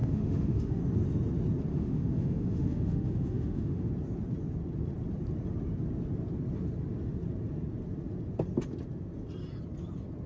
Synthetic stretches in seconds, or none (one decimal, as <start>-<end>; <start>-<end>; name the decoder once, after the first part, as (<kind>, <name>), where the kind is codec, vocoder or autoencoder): 0.0-0.8 (autoencoder, DAC-VAE); 1.7-3.9